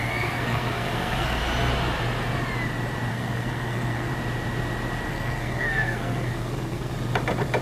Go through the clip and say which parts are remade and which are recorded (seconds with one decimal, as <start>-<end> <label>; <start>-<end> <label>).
0.0-1.4 remade; 1.4-3.1 recorded; 3.1-4.1 remade; 4.1-5.1 recorded; 5.1-6.9 remade; 6.9-7.6 recorded